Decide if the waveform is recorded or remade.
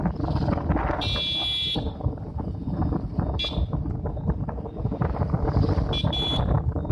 recorded